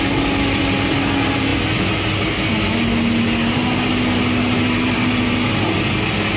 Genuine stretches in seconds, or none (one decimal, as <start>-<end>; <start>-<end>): 0.0-6.4